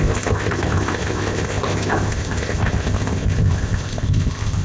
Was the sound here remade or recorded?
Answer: remade